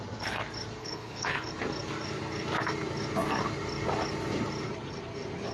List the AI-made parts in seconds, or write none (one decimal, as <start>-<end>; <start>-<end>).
0.8-1.5